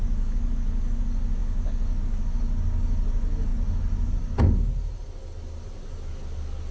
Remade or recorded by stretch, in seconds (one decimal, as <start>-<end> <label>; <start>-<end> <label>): 0.0-6.7 recorded